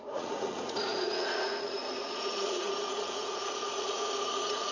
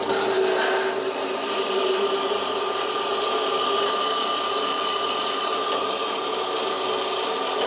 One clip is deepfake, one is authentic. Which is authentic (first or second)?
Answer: second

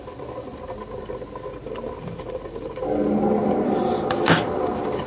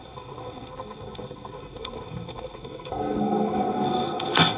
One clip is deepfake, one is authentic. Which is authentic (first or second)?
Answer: first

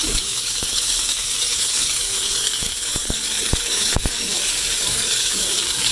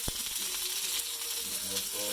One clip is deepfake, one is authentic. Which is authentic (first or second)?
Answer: second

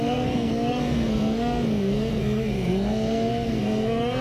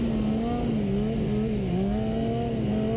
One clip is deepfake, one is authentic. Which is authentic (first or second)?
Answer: second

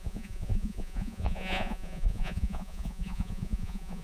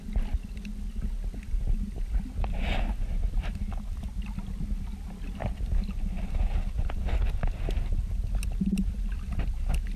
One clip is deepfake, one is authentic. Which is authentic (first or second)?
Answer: second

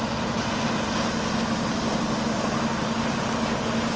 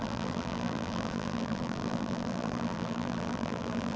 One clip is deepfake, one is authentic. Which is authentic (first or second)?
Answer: first